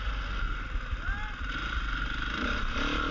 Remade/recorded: recorded